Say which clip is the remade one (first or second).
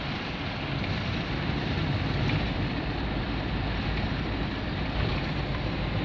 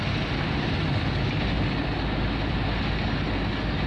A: first